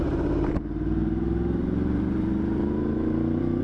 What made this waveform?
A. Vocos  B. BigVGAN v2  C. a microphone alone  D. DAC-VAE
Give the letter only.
B